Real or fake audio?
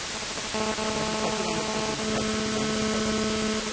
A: real